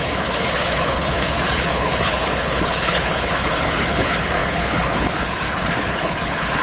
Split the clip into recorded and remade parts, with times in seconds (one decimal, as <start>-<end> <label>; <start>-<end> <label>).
0.0-6.6 remade